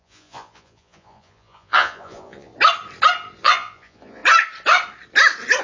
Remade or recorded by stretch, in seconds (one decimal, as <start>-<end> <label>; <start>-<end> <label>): 0.0-2.5 remade; 2.5-3.4 recorded; 3.4-4.2 remade; 4.2-5.6 recorded